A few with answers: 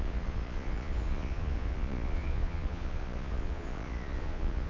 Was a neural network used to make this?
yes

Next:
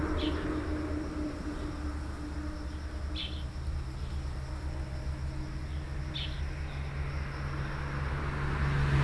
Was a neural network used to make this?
no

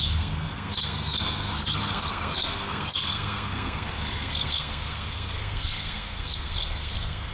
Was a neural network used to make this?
yes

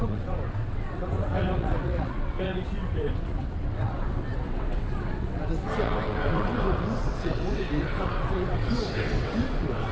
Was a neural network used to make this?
yes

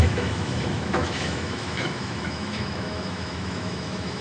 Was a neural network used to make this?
yes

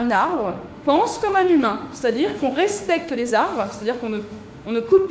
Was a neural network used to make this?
yes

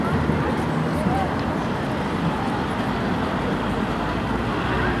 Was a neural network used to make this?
no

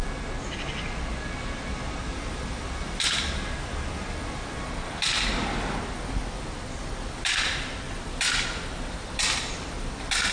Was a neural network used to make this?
no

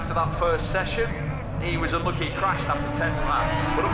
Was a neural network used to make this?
no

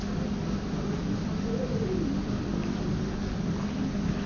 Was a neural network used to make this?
no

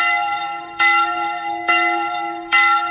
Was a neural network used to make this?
yes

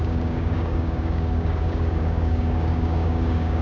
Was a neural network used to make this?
yes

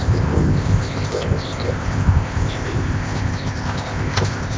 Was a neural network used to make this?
yes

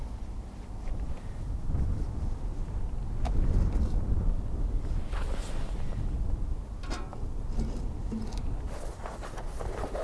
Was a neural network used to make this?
no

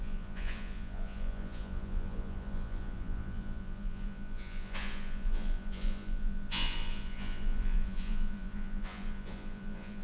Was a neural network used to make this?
yes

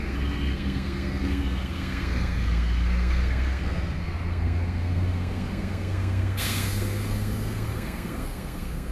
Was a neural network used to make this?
yes